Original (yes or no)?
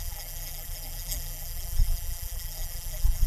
no